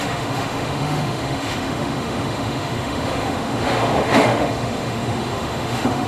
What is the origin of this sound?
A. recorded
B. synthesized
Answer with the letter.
B